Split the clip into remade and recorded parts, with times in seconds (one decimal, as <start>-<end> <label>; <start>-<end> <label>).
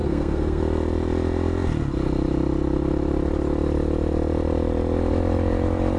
0.0-0.6 remade; 0.6-6.0 recorded